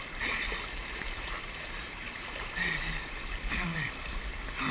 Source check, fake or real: real